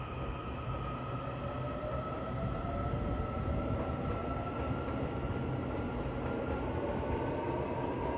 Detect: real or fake real